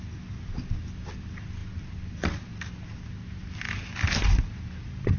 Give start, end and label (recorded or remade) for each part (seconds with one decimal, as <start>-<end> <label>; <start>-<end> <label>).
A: 0.0-5.2 recorded